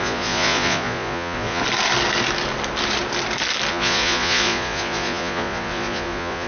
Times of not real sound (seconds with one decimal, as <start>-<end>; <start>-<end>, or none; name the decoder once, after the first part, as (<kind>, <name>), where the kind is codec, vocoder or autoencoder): 0.0-1.6 (vocoder, Vocos); 3.7-6.5